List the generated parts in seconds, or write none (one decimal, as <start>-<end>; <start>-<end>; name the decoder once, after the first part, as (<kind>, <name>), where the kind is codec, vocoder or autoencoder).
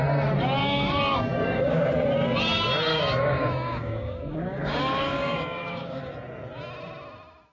0.6-1.9 (codec, DAC); 2.9-6.0